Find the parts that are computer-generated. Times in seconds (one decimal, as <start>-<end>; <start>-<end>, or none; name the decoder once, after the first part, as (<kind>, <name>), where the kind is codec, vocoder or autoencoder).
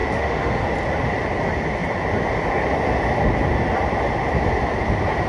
0.0-0.6 (autoencoder, DAC-VAE)